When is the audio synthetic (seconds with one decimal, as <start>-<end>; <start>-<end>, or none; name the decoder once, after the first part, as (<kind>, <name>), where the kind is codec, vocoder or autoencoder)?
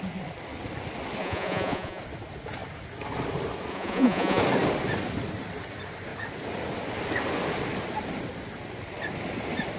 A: 1.2-2.0 (vocoder, Vocos); 3.7-4.4